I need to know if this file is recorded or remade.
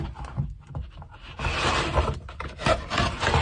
recorded